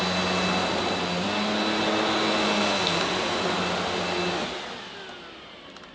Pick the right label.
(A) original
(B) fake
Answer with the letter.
A